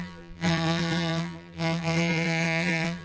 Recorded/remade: remade